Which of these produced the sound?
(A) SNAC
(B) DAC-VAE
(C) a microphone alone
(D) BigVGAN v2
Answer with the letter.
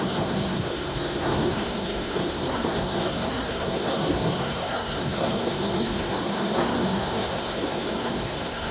A